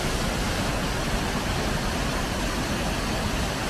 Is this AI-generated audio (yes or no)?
no